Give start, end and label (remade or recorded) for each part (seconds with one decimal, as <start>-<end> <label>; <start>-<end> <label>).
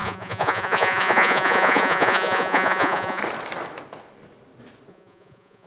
0.0-3.2 remade; 3.2-4.9 recorded; 4.9-5.7 remade